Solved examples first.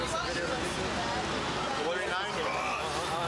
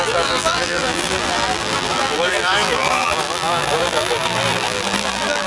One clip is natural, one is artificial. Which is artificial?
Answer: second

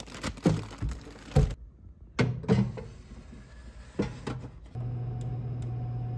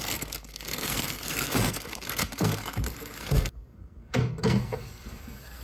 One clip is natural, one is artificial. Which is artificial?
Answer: second